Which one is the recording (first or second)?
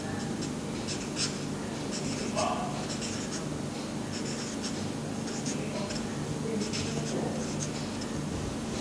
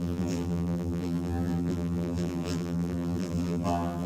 first